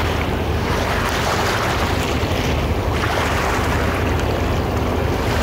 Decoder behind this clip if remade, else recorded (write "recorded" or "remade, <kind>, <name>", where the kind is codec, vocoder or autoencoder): recorded